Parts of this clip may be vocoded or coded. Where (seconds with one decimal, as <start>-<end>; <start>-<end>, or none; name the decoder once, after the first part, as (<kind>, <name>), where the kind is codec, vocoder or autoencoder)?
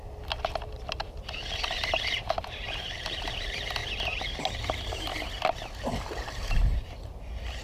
none